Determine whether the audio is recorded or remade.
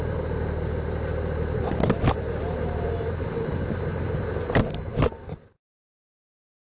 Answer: recorded